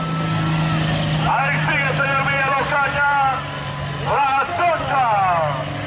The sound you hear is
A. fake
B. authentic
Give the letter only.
B